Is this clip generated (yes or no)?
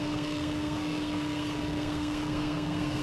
yes